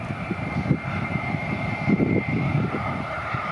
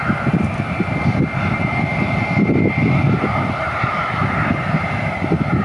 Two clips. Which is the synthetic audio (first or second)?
first